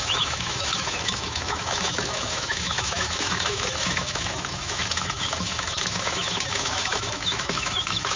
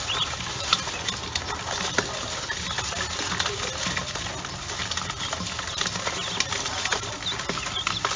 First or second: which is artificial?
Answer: first